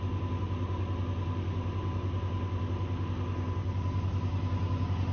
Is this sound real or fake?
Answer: real